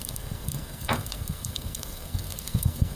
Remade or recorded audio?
remade